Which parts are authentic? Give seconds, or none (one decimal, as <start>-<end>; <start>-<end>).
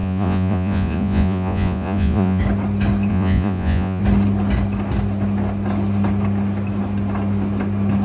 2.4-3.1; 4.0-8.0